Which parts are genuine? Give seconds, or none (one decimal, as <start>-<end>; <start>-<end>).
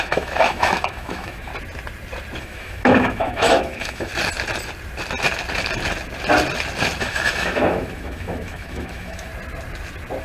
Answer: 1.5-2.4; 4.1-7.0; 9.3-10.2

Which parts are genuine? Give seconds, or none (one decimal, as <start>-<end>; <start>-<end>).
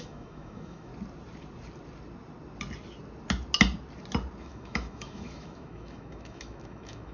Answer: 0.9-4.4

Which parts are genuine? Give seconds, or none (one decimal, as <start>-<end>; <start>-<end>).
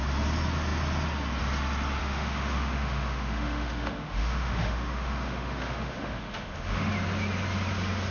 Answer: 0.0-2.0; 6.9-8.1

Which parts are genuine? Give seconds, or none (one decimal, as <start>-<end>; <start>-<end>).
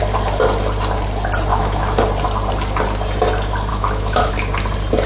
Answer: 0.0-1.5; 2.0-3.7; 4.3-5.1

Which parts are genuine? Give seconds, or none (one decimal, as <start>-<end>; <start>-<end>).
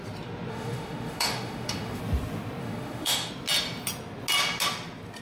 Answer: 0.0-0.5; 2.0-2.6; 3.3-5.2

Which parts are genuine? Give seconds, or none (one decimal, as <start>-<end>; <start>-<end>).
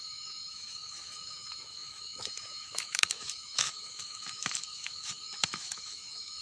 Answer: none